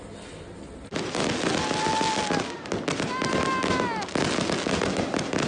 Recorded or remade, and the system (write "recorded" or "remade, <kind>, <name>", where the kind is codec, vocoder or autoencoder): recorded